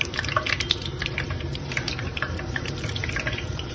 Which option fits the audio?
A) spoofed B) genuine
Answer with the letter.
A